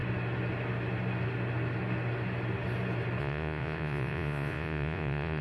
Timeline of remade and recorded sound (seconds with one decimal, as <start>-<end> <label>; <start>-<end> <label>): 0.0-3.2 recorded; 3.2-5.4 remade